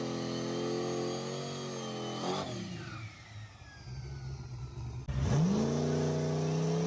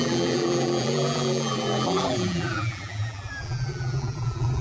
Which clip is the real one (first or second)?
first